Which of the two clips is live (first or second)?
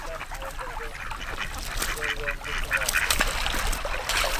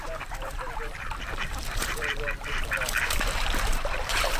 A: first